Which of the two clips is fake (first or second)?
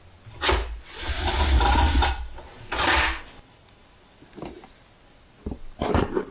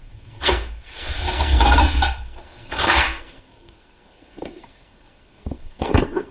second